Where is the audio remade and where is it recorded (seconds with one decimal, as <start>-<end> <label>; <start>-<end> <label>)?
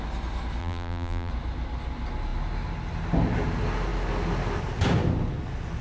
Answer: 0.0-0.6 recorded; 0.6-1.3 remade; 1.3-5.8 recorded